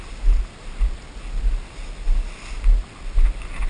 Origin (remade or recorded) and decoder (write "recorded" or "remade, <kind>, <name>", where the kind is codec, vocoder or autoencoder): recorded